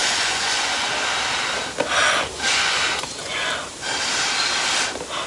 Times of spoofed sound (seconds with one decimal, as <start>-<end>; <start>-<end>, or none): 0.0-0.9; 2.0-3.5